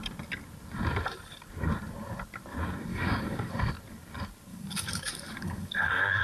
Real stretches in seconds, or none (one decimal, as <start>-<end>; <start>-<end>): 0.0-2.9; 3.5-4.5